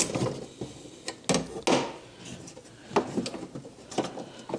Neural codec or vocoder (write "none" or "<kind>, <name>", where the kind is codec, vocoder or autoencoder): none